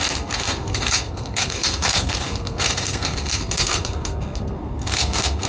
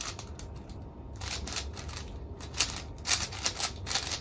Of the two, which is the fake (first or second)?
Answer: first